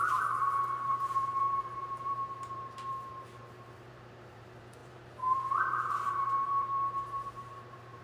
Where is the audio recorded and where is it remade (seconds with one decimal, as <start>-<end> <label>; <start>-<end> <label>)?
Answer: 0.0-8.0 remade